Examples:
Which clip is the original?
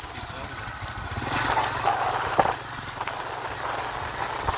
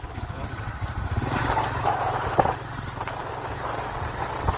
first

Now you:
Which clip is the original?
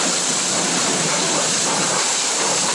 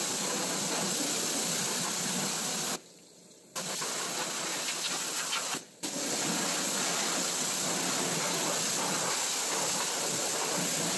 second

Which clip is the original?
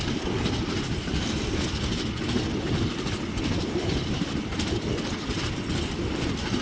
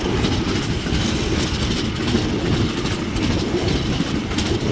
second